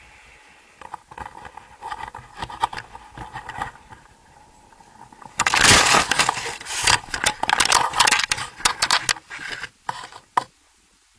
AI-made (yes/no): no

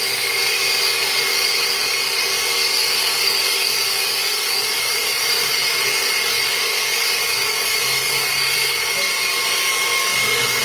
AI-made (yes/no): yes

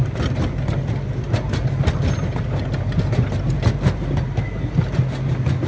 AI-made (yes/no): no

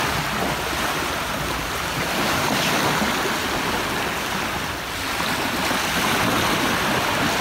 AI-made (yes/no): no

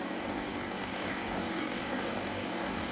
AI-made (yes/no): yes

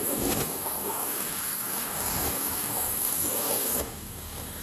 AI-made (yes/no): yes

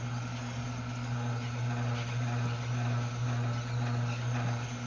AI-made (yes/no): no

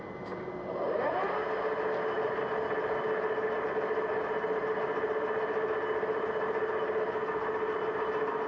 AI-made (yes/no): no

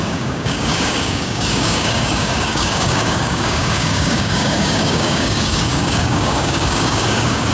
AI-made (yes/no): yes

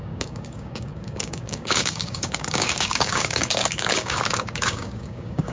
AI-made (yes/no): yes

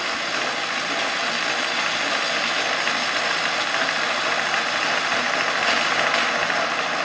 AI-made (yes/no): no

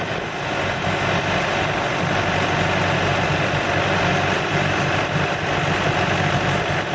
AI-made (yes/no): no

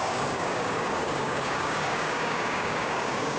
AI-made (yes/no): yes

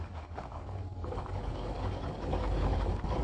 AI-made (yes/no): yes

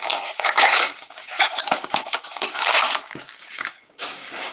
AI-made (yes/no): yes